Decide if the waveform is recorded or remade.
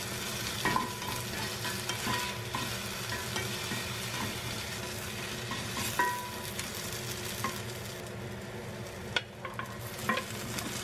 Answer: recorded